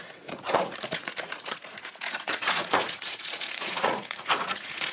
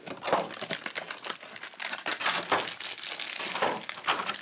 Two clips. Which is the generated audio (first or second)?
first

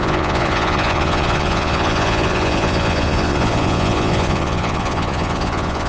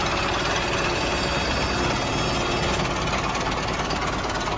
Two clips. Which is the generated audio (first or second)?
first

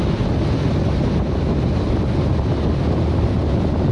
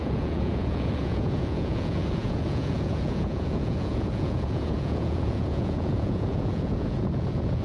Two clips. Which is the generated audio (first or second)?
second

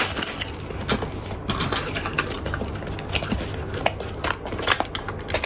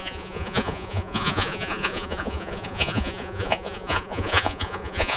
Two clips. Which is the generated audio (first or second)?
second